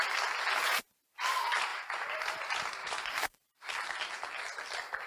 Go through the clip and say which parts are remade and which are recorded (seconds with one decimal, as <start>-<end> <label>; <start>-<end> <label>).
0.0-1.7 recorded; 1.7-2.4 remade; 2.4-2.8 recorded; 2.8-3.8 remade; 3.8-5.1 recorded